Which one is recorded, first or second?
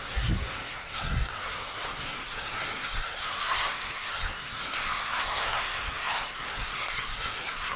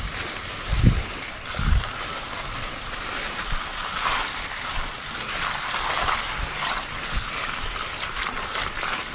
second